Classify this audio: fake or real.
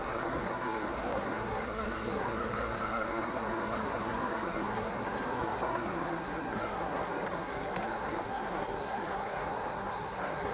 fake